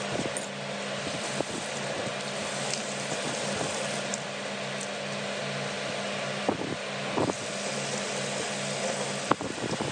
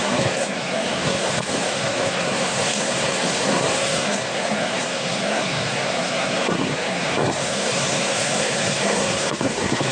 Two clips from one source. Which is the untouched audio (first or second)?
first